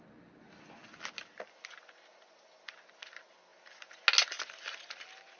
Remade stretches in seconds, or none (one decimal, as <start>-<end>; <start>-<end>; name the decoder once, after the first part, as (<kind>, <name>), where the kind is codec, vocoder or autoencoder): none